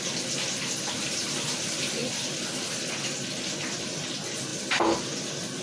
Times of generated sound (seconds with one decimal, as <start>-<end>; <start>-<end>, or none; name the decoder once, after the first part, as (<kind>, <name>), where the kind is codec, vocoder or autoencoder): none